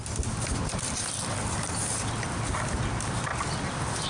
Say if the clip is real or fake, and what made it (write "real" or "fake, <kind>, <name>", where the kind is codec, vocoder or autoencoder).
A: real